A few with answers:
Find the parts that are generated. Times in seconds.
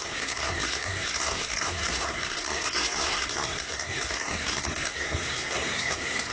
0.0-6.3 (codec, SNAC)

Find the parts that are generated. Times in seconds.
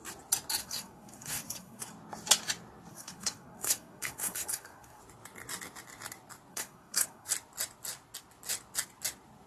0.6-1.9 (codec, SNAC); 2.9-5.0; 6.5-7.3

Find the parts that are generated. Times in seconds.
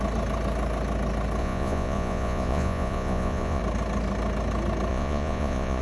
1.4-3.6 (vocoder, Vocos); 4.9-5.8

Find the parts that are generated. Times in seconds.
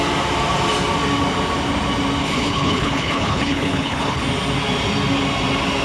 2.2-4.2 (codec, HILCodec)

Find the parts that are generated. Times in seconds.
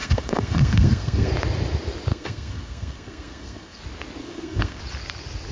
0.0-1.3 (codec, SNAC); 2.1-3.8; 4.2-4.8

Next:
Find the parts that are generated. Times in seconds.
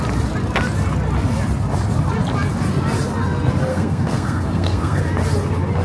3.7-5.0 (codec, SNAC)